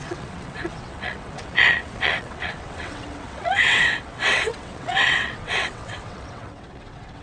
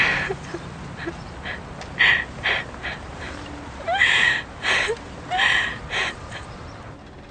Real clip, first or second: second